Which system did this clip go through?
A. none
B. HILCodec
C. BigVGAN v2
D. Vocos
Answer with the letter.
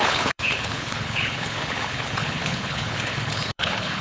B